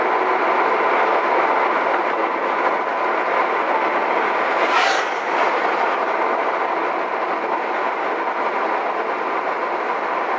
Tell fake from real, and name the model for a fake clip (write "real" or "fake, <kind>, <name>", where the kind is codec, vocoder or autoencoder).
real